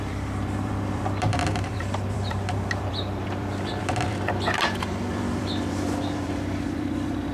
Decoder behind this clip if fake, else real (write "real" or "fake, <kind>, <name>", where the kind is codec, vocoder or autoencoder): fake, vocoder, BigVGAN v2